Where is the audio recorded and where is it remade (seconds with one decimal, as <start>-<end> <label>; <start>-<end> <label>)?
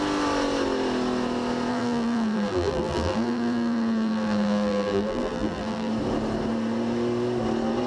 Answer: 0.0-1.7 recorded; 1.7-5.9 remade; 5.9-7.9 recorded